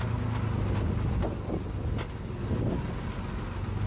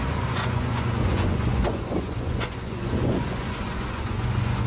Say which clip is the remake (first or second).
second